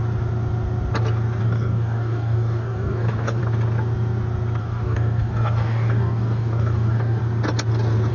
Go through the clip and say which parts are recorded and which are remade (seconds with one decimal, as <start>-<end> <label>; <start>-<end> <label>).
0.0-1.4 recorded; 1.4-3.4 remade; 3.4-4.6 recorded; 4.6-7.2 remade; 7.2-8.1 recorded